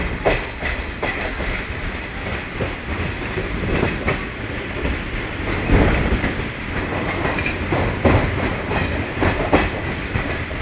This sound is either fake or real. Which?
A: fake